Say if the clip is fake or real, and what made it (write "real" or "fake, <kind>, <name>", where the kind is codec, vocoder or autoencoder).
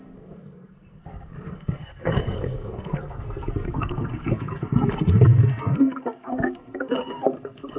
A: fake, codec, SNAC